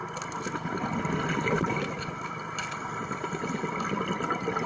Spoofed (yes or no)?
no